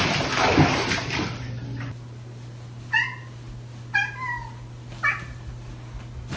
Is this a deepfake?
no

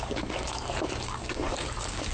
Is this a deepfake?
yes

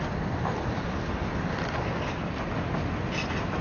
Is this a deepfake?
no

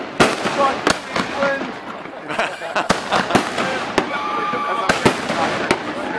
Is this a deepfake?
no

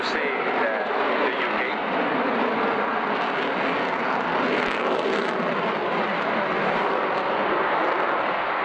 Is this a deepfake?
no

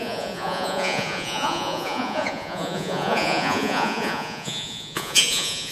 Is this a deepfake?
yes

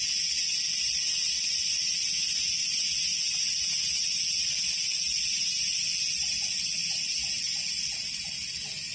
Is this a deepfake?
no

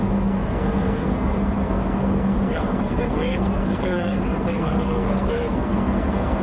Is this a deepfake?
yes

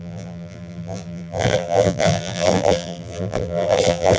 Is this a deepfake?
yes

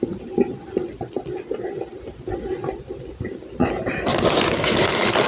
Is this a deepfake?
no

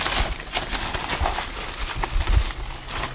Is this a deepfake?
no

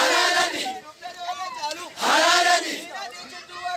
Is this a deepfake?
no